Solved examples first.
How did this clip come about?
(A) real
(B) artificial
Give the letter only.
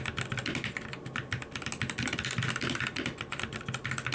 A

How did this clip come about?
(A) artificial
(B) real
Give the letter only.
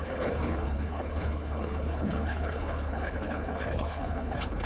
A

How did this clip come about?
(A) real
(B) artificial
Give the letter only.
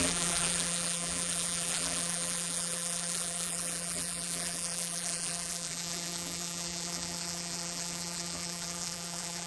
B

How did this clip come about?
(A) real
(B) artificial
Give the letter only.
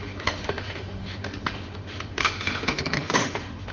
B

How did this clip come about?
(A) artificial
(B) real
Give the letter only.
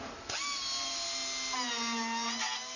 B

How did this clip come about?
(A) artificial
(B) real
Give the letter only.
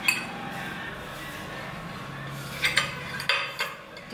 B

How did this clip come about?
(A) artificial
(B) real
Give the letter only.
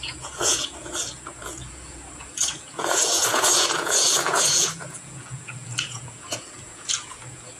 A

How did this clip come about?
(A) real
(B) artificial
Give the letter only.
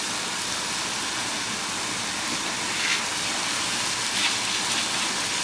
A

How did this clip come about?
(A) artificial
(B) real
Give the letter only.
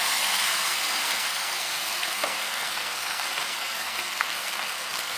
A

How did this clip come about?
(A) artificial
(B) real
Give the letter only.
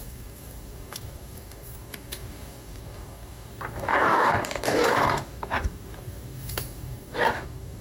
A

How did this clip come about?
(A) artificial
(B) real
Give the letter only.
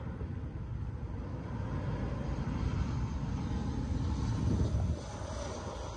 B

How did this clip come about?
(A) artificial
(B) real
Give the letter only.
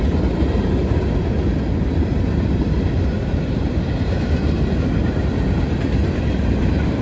B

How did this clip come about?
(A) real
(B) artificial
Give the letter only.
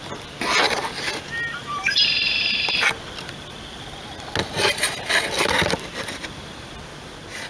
A